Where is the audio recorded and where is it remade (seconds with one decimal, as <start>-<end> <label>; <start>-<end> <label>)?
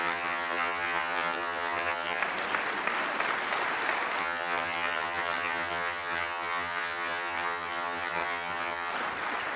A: 0.0-2.2 remade; 2.2-4.2 recorded; 4.2-8.9 remade; 8.9-9.6 recorded